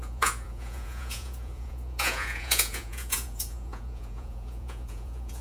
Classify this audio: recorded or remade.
remade